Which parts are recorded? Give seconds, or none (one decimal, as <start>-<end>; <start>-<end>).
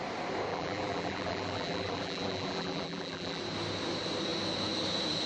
0.0-0.5; 3.4-5.3